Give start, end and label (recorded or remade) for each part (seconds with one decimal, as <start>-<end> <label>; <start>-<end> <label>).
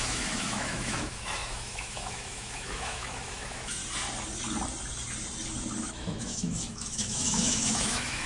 0.0-3.8 remade; 3.8-5.8 recorded; 5.8-8.3 remade